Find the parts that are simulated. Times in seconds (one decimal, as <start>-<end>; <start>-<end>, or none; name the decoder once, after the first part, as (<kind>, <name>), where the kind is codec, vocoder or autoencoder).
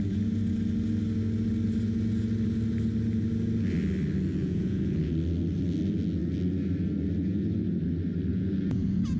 4.4-5.1 (vocoder, Vocos); 8.3-9.2